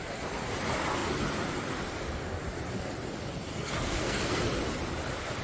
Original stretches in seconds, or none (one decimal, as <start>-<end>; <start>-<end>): 0.0-3.5; 4.4-5.4